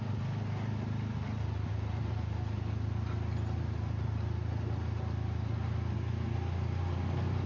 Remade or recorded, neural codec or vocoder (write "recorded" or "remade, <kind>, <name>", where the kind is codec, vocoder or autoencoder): recorded